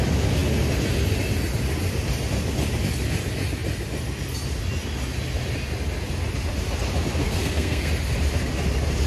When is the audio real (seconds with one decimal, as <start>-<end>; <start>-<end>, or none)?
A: 0.0-7.2; 7.9-9.1